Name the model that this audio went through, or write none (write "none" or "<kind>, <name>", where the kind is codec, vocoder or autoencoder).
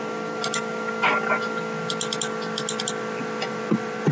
none